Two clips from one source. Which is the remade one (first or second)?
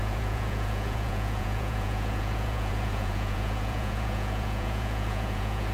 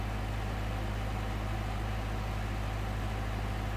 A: first